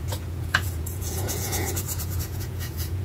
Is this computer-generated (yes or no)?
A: yes